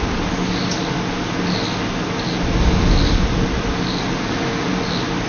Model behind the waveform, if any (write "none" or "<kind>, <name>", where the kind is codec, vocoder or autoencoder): none